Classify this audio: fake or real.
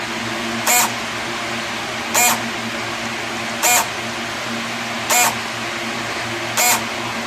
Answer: real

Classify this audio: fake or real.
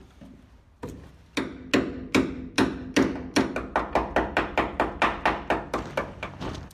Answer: real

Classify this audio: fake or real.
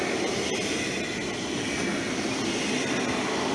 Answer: real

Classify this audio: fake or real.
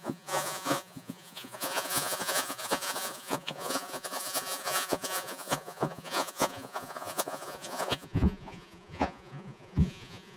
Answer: fake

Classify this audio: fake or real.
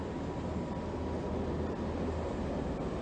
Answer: real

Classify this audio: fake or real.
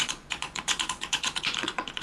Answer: fake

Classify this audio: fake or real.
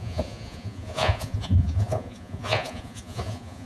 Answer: fake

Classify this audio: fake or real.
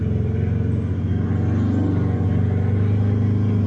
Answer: real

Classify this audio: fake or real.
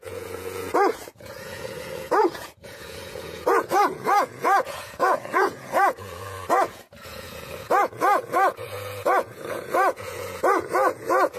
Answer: fake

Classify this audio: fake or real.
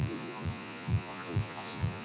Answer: fake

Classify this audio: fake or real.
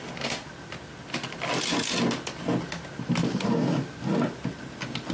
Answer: real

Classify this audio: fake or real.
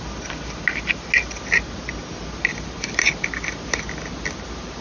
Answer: real